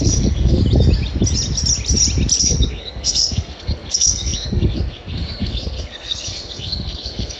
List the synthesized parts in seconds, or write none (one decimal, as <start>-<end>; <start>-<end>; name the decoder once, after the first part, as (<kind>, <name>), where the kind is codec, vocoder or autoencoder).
0.0-0.6 (codec, SNAC); 2.4-7.4